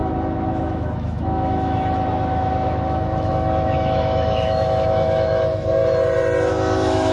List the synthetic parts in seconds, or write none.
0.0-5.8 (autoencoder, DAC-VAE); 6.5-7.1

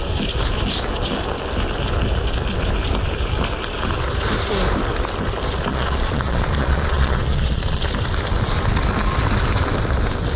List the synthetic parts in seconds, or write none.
5.7-7.9 (vocoder, Vocos)

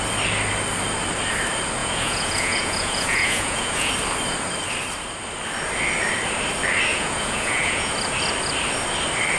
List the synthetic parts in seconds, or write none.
1.8-3.9 (vocoder, Vocos); 6.9-7.9

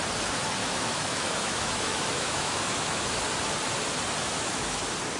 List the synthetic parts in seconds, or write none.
0.6-3.2 (autoencoder, DAC-VAE); 4.2-4.8

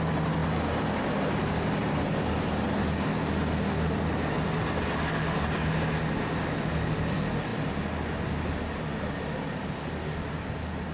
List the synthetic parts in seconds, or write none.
none

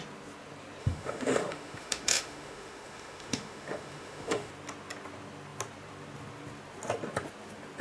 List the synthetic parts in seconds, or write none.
0.8-4.5 (autoencoder, DAC-VAE)

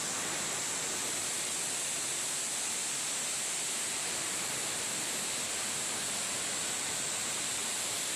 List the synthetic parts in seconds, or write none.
0.0-2.8 (vocoder, BigVGAN v2); 3.9-8.2

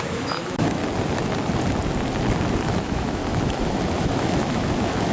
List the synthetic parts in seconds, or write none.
0.0-0.8 (autoencoder, DAC-VAE); 2.8-3.2; 4.0-5.1